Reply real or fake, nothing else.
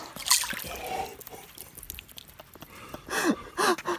real